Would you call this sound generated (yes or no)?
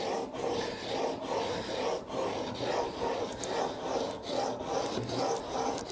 no